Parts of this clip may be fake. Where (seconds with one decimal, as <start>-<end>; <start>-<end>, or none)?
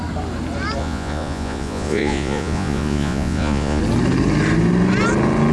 0.8-3.8